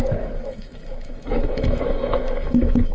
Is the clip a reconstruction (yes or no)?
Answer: yes